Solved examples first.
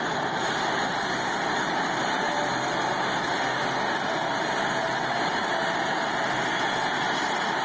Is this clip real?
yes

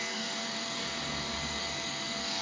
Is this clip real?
no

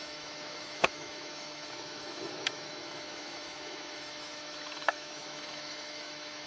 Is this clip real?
no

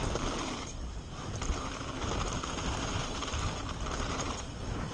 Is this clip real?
yes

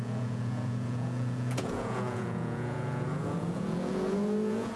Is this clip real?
no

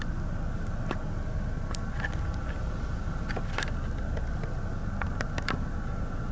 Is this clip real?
yes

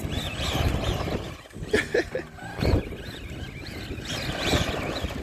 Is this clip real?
yes